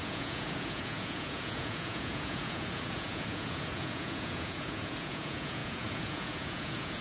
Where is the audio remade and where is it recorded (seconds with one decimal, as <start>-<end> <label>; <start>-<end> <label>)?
0.0-7.0 remade